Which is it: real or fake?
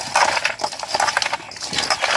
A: real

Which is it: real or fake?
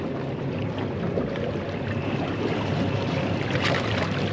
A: real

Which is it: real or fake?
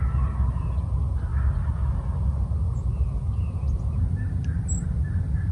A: real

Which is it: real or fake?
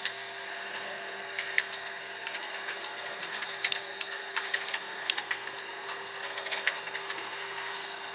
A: fake